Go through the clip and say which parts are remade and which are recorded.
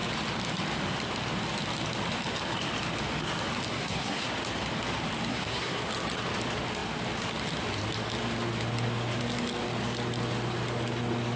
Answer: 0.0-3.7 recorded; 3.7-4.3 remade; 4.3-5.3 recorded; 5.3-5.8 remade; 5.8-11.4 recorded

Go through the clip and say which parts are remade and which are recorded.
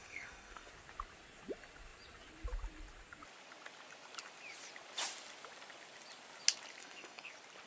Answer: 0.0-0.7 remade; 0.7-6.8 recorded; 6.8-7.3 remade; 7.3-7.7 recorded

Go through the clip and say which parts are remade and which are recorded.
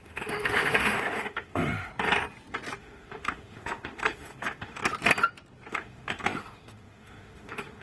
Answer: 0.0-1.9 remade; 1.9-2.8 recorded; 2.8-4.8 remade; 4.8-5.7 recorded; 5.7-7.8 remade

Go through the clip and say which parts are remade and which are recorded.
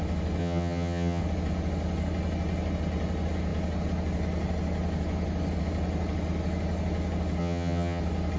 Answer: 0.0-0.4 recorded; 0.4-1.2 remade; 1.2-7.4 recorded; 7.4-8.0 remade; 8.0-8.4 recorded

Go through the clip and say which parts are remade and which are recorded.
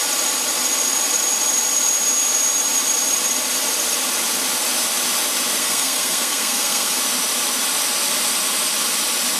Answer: 0.0-5.6 recorded; 5.6-7.0 remade; 7.0-9.4 recorded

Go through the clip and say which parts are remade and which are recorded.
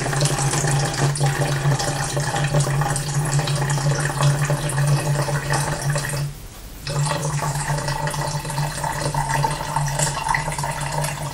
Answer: 0.0-7.2 recorded; 7.2-7.8 remade; 7.8-11.3 recorded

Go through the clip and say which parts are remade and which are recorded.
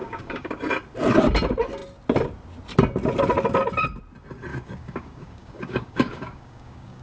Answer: 0.0-0.5 remade; 0.5-4.5 recorded; 4.5-7.0 remade